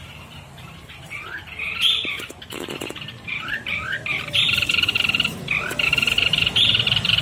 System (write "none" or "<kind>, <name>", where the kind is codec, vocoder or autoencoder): vocoder, BigVGAN v2